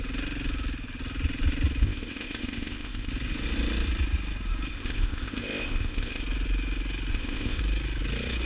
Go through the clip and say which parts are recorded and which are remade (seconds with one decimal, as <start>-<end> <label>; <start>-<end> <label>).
0.0-1.8 recorded; 1.8-3.1 remade; 3.1-4.7 recorded; 4.7-6.2 remade; 6.2-7.1 recorded; 7.1-7.6 remade; 7.6-8.4 recorded